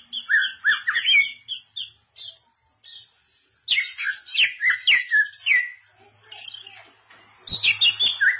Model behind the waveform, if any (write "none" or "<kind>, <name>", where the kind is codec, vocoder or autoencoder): none